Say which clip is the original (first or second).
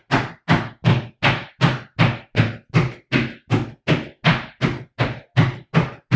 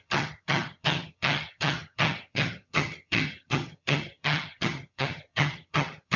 first